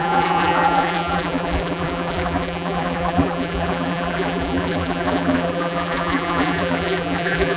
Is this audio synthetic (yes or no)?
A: yes